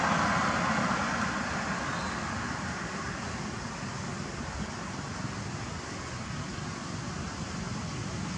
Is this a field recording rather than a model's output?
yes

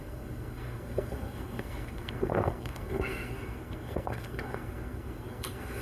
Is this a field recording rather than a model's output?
no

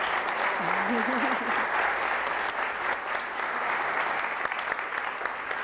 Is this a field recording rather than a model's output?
yes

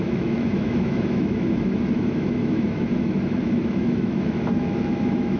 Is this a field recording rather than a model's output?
no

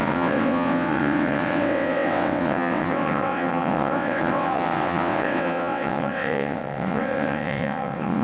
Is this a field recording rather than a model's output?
no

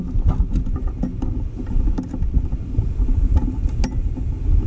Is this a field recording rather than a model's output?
yes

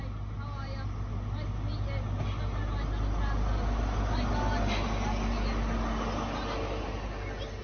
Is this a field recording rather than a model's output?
yes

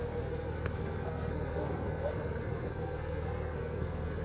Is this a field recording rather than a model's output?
no